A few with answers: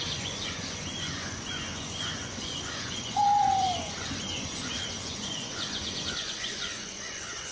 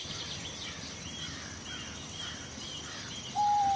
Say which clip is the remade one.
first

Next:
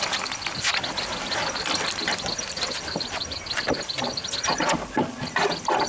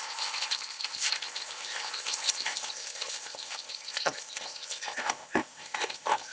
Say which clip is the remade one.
second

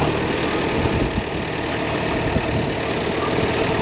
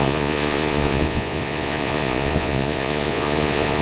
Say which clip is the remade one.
second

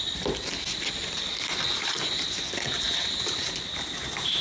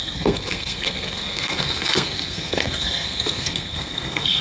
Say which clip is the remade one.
second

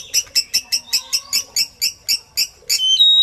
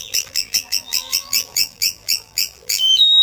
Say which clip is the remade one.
second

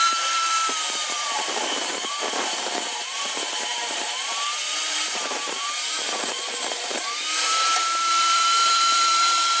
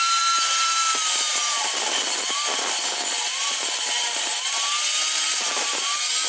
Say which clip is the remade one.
first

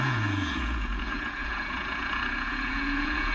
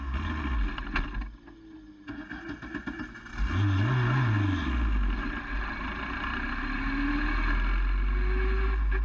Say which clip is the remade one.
first